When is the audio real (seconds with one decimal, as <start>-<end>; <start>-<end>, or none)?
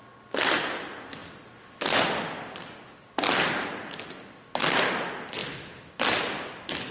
0.0-5.4; 6.5-6.9